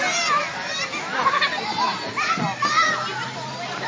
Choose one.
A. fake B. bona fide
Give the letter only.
B